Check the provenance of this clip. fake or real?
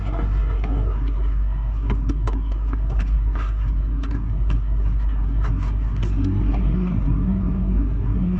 fake